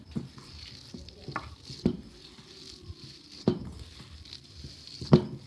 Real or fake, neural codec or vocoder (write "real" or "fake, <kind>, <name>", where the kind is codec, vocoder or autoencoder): real